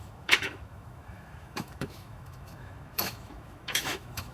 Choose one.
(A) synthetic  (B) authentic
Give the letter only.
A